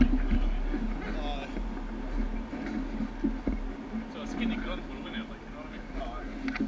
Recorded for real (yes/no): yes